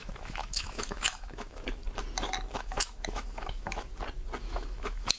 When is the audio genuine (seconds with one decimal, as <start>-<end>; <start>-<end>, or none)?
1.8-2.5; 3.9-4.4